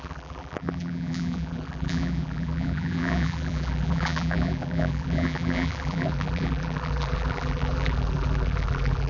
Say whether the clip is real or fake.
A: fake